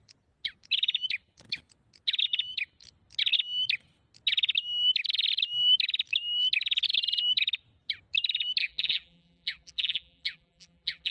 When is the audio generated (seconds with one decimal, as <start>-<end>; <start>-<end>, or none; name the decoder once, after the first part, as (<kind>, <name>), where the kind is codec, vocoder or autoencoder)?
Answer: 8.6-11.1 (vocoder, BigVGAN v2)